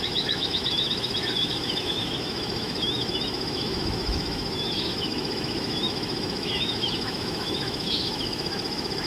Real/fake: fake